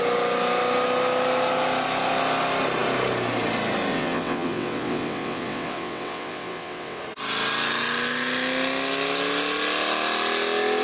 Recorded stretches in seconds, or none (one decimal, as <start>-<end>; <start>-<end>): 0.0-3.9; 7.0-10.8